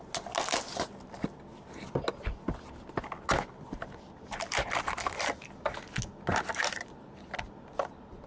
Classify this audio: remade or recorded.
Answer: recorded